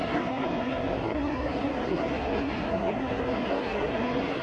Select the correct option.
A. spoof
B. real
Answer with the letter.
A